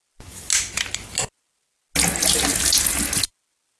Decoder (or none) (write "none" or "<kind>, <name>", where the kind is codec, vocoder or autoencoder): none